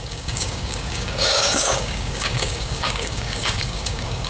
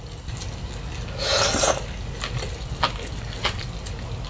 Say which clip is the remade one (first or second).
first